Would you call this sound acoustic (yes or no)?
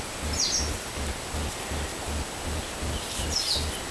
yes